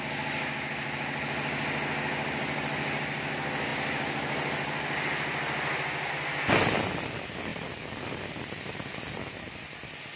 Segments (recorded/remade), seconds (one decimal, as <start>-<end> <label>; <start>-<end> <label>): 0.0-10.2 recorded

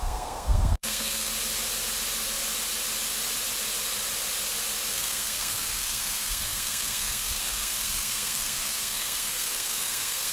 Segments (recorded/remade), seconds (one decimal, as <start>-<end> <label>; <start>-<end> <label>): 0.0-1.3 remade; 1.3-4.9 recorded; 4.9-10.3 remade

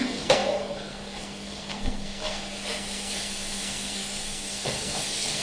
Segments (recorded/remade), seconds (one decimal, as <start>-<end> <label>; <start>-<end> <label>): 0.0-5.4 remade

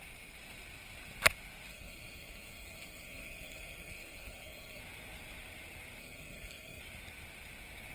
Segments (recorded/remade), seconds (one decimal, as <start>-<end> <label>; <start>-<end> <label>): 0.0-1.7 recorded; 1.7-4.8 remade; 4.8-6.0 recorded; 6.0-6.8 remade; 6.8-7.9 recorded